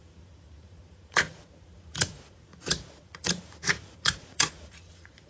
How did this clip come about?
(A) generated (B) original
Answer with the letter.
A